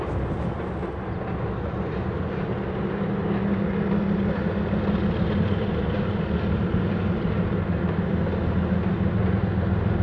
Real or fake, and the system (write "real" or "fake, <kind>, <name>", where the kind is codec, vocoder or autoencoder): real